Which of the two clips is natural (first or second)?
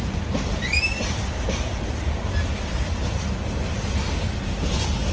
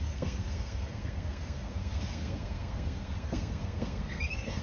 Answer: first